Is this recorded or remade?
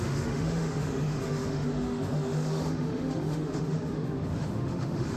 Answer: remade